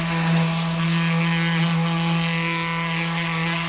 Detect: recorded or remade recorded